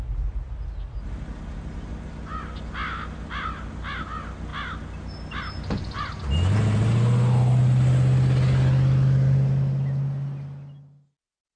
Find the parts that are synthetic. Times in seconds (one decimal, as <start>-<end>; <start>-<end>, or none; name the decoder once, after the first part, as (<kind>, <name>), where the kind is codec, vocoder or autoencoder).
none